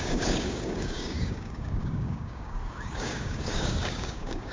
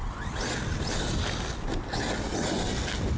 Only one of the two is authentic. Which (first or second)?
second